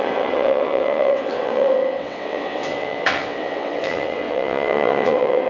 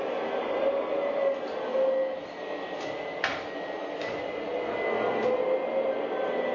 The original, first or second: second